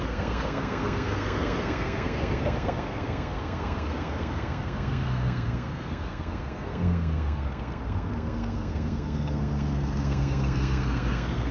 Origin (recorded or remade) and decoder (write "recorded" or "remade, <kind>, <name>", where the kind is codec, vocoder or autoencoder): remade, codec, SNAC